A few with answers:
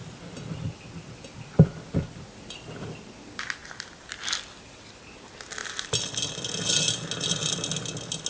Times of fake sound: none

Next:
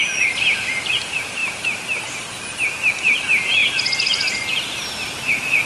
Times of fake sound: none

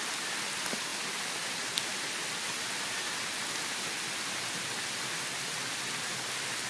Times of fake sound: none

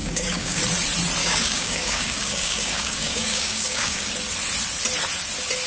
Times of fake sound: 0.0-0.6 (codec, DAC); 1.2-4.1

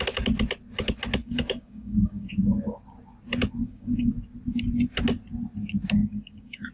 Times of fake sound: 1.2-2.3 (codec, DAC); 3.6-4.1; 6.0-6.7

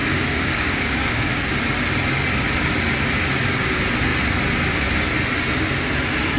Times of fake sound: 0.0-1.4 (codec, DAC)

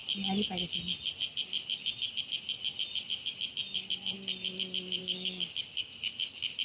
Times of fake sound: 5.0-5.9 (codec, DAC)

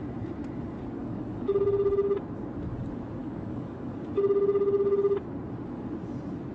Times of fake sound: 1.0-1.6 (codec, DAC); 3.2-3.9